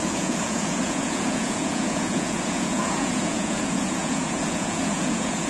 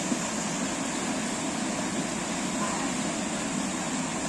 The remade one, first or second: first